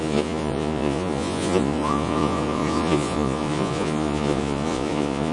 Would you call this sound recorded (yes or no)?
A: no